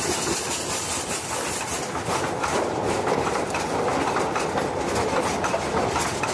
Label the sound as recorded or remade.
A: recorded